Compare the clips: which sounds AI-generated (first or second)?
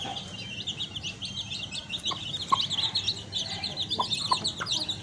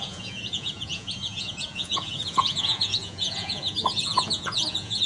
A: second